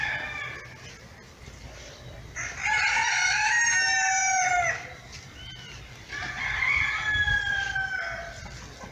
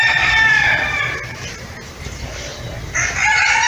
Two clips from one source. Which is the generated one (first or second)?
second